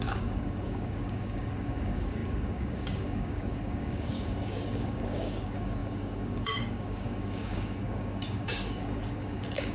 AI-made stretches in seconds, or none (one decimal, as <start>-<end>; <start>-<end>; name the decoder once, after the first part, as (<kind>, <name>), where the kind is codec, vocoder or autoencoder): 0.0-9.7 (codec, DAC)